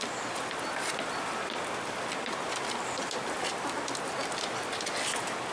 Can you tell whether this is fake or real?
real